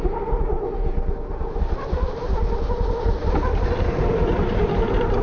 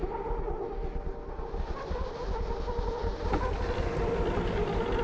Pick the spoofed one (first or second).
first